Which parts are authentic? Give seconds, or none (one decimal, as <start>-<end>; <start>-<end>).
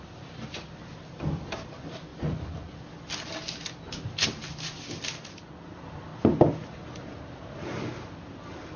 0.0-8.8